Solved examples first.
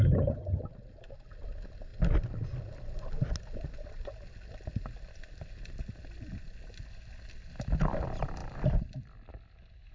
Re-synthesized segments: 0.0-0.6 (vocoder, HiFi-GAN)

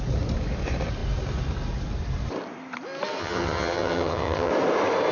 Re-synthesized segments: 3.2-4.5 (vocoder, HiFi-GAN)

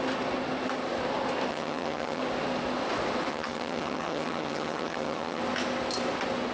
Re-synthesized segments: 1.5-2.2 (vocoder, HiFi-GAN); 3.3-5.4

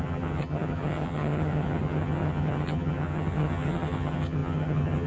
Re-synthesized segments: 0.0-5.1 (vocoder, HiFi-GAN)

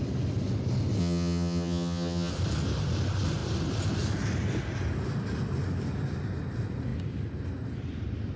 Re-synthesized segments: 1.0-2.3 (vocoder, HiFi-GAN)

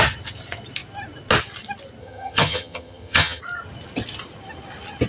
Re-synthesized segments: 2.0-3.4 (vocoder, HiFi-GAN)

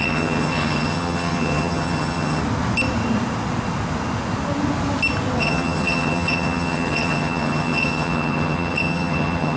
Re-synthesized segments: 0.0-2.4 (vocoder, HiFi-GAN); 5.4-9.6

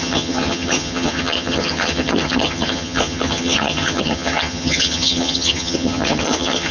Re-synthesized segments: 0.0-6.7 (vocoder, HiFi-GAN)